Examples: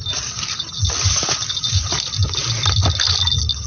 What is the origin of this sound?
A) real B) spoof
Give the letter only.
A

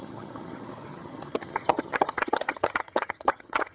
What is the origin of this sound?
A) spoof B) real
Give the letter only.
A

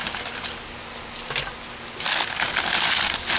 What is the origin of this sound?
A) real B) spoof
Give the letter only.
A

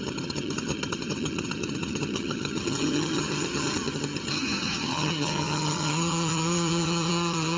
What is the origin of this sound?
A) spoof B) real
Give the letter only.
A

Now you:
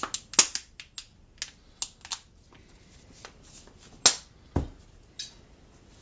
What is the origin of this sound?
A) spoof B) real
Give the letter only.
B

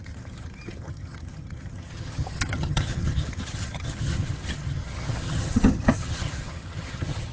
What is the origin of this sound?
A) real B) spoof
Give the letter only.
B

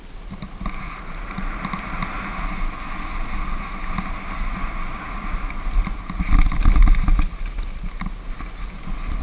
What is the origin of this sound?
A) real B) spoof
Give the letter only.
A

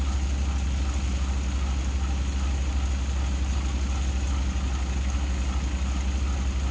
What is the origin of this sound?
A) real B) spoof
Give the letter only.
A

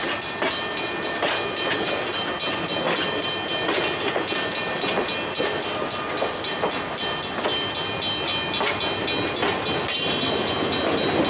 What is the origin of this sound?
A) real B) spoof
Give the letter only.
A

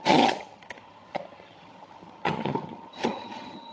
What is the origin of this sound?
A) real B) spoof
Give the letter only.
B